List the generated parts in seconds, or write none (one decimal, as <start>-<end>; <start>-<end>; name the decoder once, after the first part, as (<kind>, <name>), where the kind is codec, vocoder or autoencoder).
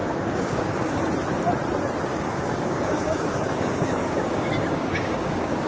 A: 0.0-1.0 (codec, DAC); 2.1-5.7